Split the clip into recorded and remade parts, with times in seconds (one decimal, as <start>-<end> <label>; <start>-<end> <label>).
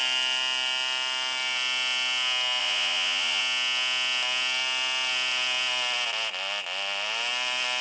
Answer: 0.0-2.6 recorded; 2.6-3.4 remade; 3.4-7.8 recorded